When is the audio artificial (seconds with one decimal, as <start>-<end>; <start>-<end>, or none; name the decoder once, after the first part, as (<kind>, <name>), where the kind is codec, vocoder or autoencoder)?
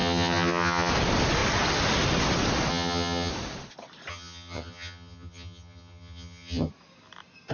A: 0.0-0.9 (vocoder, HiFi-GAN); 2.7-3.3; 4.1-6.7